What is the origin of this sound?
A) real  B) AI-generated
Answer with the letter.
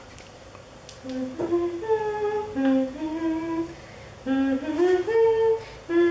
A